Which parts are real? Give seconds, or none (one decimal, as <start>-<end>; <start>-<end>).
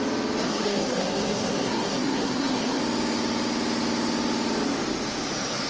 0.0-0.4; 2.8-5.7